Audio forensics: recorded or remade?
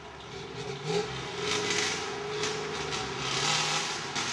recorded